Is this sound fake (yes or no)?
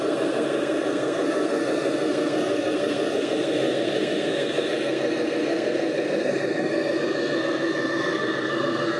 yes